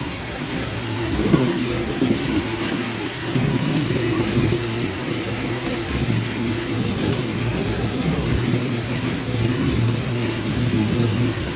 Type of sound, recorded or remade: remade